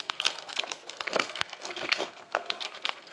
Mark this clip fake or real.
fake